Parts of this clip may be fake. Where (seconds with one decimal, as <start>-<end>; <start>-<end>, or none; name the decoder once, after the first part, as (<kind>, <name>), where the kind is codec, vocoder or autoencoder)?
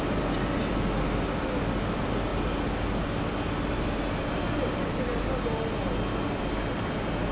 none